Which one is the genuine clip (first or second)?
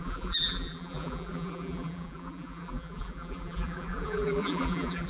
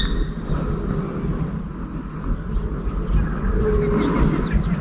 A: second